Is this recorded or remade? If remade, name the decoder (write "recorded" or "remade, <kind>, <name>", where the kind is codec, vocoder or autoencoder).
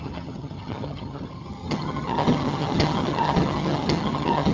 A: remade, vocoder, HiFi-GAN